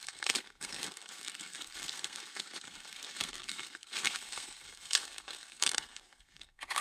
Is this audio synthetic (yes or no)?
yes